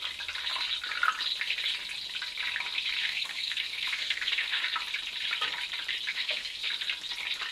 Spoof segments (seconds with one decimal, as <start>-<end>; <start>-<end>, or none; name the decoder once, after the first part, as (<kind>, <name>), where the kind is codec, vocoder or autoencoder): 3.0-4.6 (codec, SNAC); 6.1-6.7